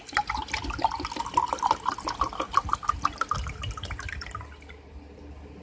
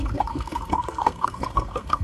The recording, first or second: first